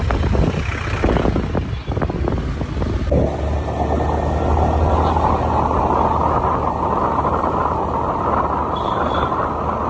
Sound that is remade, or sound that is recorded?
recorded